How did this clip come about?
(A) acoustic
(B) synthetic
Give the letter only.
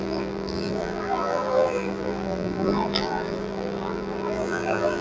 B